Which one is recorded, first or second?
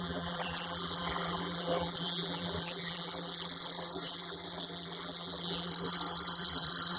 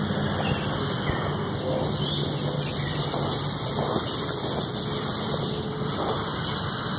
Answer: second